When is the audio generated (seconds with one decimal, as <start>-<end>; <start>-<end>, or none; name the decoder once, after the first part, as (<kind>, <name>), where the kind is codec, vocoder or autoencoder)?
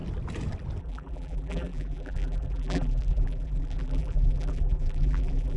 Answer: 0.8-5.6 (vocoder, BigVGAN v2)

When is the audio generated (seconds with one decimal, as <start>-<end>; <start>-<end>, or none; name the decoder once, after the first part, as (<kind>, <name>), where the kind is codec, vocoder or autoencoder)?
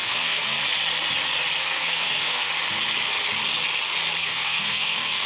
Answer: 0.0-0.6 (codec, SNAC); 1.6-2.5; 4.2-5.3